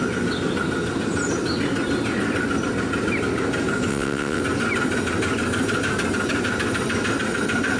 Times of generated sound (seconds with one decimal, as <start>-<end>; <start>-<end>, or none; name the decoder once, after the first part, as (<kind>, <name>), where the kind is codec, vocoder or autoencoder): 3.9-4.4 (vocoder, WaveNeXt)